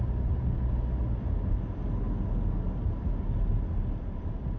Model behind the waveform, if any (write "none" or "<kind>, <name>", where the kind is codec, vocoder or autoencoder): none